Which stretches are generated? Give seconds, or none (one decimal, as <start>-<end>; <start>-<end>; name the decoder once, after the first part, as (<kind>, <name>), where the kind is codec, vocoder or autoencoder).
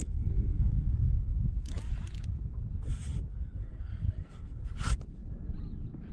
0.0-1.4 (codec, SNAC); 3.3-4.6